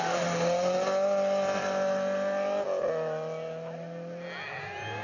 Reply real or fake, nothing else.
real